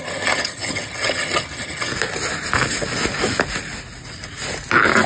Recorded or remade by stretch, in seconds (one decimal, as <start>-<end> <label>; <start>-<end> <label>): 0.0-1.9 remade; 1.9-5.1 recorded